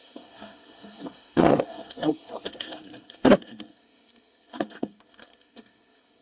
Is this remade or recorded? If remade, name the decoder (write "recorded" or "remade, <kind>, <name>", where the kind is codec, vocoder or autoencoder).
remade, codec, SNAC